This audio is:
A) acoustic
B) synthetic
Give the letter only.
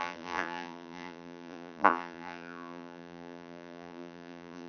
B